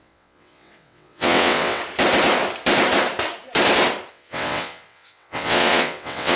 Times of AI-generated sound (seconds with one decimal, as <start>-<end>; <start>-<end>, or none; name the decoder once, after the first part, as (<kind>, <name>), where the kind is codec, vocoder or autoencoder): 0.0-1.8 (vocoder, WaveNeXt); 4.1-6.4